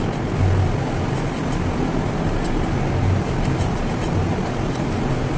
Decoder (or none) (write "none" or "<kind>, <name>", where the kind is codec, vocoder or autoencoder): none